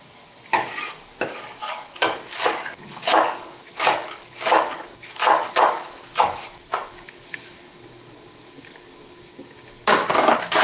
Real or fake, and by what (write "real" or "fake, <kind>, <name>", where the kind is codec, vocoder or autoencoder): fake, codec, DAC